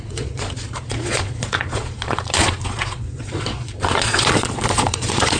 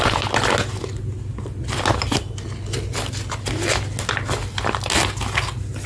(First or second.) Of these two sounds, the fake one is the first